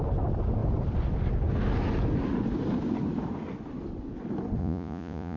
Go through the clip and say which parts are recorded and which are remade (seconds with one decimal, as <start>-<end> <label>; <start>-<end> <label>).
0.0-4.6 recorded; 4.6-5.4 remade